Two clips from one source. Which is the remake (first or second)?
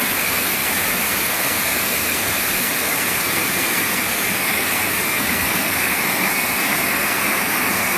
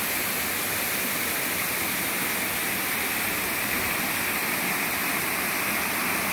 first